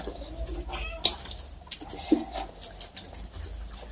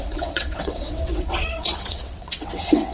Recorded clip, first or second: first